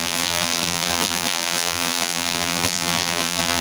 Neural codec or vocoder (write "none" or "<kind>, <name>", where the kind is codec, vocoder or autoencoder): vocoder, BigVGAN v2